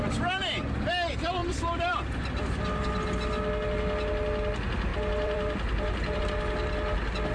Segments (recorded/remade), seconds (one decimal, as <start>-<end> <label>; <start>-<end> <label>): 0.0-1.4 recorded; 1.4-2.6 remade; 2.6-4.9 recorded; 4.9-6.2 remade; 6.2-7.3 recorded